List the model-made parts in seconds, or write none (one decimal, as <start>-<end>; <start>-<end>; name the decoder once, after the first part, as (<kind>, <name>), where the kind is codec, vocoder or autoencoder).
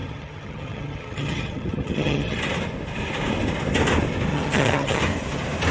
0.0-2.4 (vocoder, HiFi-GAN); 4.3-5.0